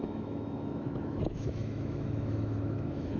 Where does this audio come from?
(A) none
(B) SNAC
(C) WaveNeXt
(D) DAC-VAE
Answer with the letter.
D